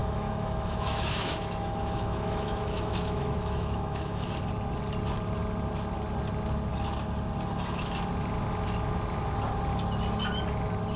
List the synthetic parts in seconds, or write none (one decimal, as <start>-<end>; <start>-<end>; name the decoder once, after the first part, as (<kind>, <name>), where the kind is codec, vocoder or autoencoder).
0.0-4.4 (autoencoder, DAC-VAE)